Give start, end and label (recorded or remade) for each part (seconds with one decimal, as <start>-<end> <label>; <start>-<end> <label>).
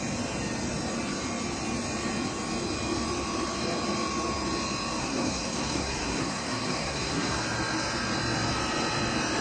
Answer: 0.0-5.0 recorded; 5.0-7.4 remade; 7.4-9.4 recorded